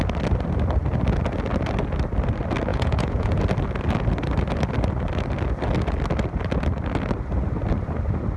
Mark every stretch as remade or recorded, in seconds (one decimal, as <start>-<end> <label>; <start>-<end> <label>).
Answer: 0.0-2.7 recorded; 2.7-3.4 remade; 3.4-8.4 recorded